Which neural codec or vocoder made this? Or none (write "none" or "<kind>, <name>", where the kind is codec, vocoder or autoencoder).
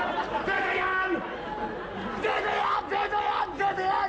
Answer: none